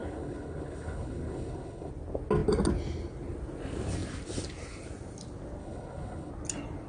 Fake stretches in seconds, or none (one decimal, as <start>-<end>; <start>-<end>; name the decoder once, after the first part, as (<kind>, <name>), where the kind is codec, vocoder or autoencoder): 0.0-1.9 (codec, HILCodec); 5.6-6.3